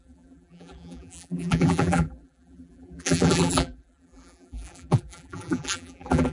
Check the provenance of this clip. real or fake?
fake